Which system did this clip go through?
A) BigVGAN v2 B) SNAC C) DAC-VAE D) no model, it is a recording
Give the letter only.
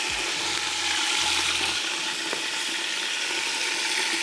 D